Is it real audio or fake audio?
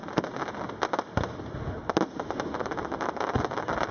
real